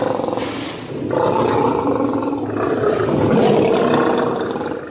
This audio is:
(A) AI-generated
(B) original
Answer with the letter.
B